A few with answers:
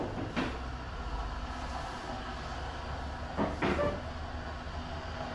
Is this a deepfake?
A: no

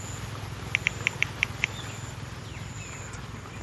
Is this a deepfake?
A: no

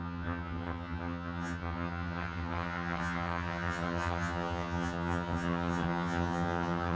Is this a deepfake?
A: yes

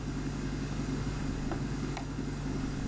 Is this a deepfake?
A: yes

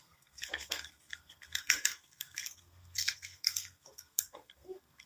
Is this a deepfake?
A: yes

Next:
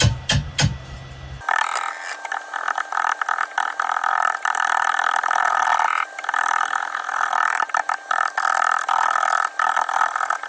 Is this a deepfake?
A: no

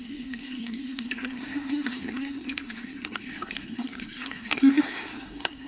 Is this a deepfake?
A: yes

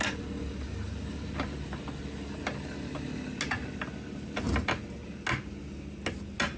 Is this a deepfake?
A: no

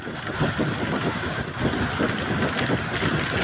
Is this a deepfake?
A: no